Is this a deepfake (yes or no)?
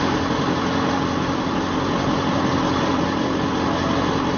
no